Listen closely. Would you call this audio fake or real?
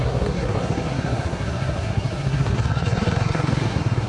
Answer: fake